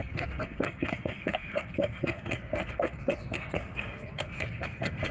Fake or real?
fake